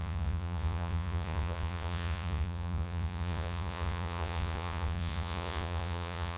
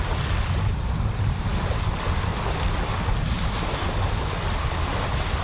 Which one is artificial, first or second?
first